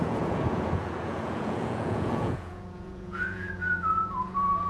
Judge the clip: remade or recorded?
remade